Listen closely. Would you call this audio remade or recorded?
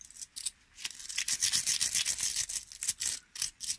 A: recorded